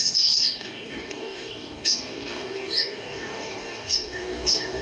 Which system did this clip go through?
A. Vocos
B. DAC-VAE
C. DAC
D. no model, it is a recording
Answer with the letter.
C